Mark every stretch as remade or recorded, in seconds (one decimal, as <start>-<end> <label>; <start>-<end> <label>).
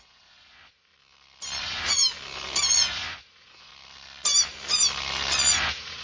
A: 0.0-0.9 remade; 0.9-1.6 recorded; 1.6-2.0 remade; 2.0-2.7 recorded; 2.7-3.7 remade; 3.7-5.5 recorded; 5.5-6.0 remade